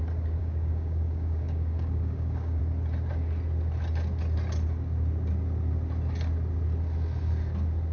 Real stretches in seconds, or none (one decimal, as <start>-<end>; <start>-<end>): 0.0-0.4; 2.6-7.9

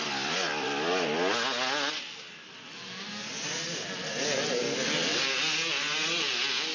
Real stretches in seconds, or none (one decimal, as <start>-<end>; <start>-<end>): 0.0-6.7

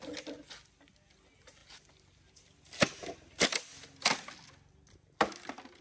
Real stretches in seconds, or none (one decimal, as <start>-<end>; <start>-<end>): 0.0-5.8

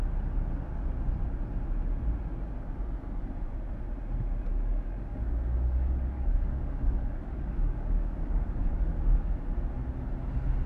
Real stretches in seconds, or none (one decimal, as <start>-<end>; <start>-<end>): 0.0-4.5; 9.3-10.7